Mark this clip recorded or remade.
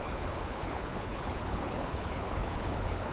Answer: remade